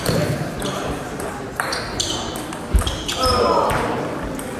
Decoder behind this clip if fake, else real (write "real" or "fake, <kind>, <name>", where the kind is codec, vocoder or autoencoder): fake, vocoder, BigVGAN v2